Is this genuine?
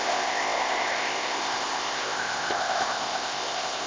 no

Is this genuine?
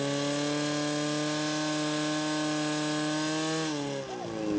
yes